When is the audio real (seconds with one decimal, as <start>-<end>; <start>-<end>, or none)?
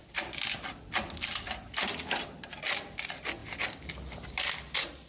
0.0-5.1